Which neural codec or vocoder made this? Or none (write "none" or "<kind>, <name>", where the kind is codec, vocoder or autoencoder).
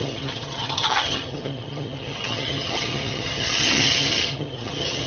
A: vocoder, HiFi-GAN